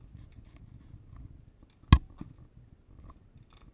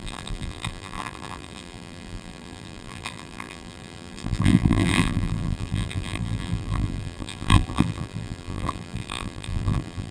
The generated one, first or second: second